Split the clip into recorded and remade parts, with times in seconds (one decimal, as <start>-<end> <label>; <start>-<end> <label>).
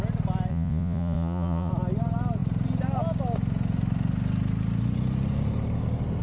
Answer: 0.0-0.5 recorded; 0.5-1.7 remade; 1.7-6.2 recorded